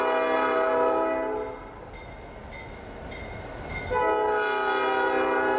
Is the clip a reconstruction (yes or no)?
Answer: no